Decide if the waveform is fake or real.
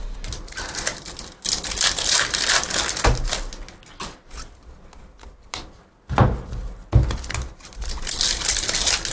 real